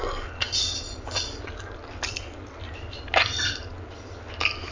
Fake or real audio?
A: real